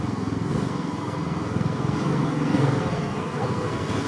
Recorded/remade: remade